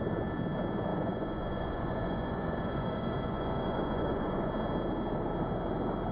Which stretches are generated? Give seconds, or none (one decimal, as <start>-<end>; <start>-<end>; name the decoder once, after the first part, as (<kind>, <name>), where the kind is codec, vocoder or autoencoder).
0.9-4.5 (vocoder, Vocos)